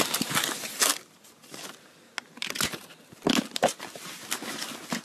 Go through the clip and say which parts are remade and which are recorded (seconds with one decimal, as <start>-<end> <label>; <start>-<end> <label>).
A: 0.0-5.0 recorded